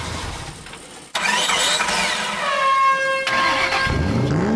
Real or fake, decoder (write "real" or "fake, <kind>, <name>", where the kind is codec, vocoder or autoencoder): real